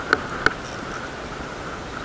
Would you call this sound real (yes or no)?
yes